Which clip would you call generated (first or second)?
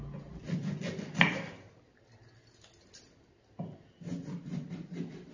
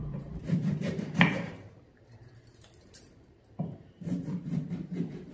second